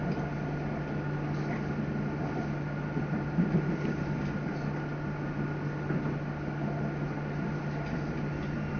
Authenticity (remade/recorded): recorded